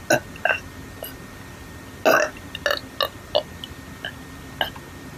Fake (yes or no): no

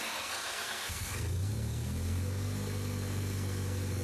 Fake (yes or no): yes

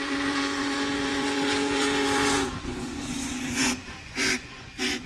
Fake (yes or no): yes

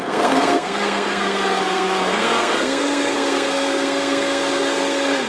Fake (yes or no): yes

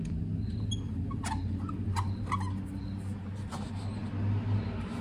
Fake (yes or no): no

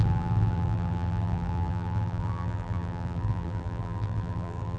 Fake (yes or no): yes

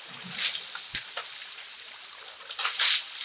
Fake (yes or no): no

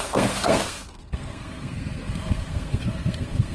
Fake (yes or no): yes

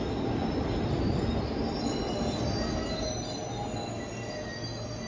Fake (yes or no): no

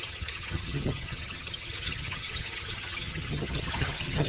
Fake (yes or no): yes